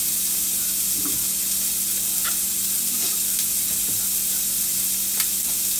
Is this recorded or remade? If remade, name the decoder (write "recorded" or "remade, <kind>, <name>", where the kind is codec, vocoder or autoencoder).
recorded